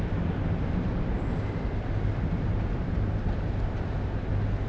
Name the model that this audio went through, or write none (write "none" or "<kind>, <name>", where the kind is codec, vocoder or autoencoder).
none